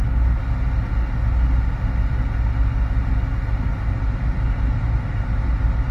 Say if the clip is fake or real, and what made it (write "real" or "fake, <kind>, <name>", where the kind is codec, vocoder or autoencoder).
real